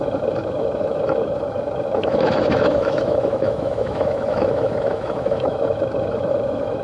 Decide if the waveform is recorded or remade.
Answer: remade